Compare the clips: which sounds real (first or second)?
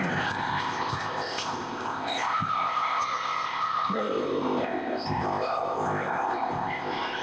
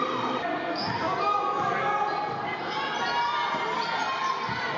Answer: second